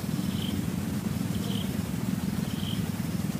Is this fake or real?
real